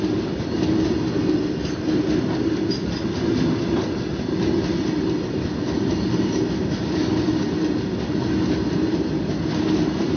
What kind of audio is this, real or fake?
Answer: real